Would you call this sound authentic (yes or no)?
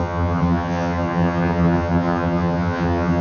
no